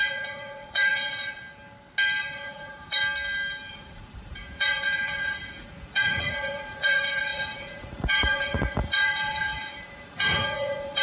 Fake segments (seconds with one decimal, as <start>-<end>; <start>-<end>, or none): 0.0-1.4; 2.2-3.0; 3.7-11.0